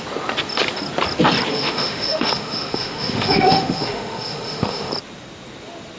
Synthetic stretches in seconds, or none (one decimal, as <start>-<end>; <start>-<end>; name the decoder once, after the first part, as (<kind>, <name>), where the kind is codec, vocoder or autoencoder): 1.5-4.9 (autoencoder, DAC-VAE)